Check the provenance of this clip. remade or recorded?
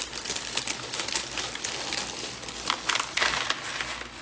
recorded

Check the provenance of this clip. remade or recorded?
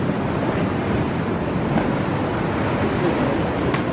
recorded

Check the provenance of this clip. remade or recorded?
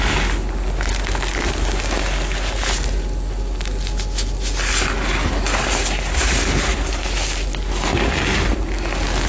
recorded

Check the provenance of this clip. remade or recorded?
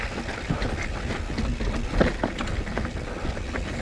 recorded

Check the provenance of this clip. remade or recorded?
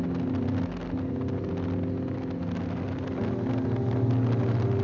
recorded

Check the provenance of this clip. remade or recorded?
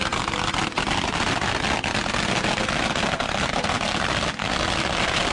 recorded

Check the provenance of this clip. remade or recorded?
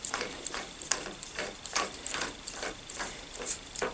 remade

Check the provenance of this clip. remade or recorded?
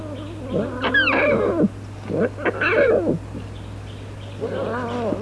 recorded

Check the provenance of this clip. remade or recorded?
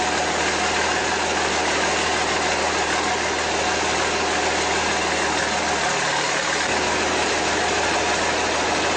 recorded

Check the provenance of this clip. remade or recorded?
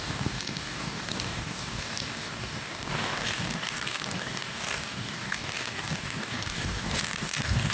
remade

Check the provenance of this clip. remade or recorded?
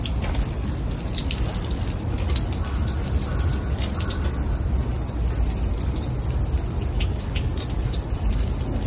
recorded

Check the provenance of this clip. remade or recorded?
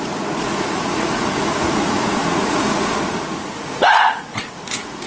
remade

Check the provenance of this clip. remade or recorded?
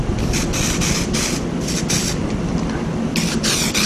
recorded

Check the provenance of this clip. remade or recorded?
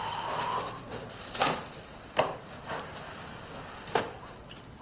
recorded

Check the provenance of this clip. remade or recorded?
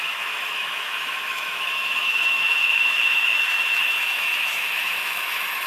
remade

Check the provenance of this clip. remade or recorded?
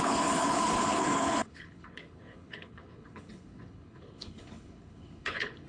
remade